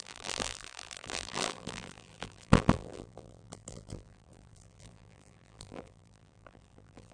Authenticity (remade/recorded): remade